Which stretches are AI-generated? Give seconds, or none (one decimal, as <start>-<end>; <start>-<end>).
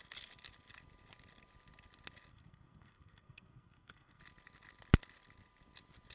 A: 2.3-4.2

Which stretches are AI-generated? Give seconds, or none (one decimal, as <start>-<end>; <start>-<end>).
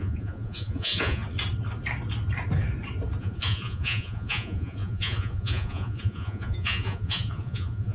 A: 0.0-1.2; 3.2-7.9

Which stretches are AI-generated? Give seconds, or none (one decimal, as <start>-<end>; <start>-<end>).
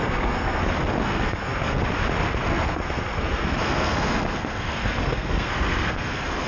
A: 0.0-0.6; 1.0-1.8; 2.5-6.5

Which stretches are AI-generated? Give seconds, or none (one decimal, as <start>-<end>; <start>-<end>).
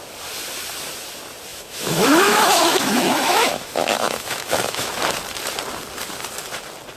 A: 1.5-5.0